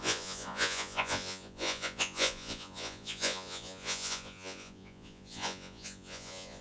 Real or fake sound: fake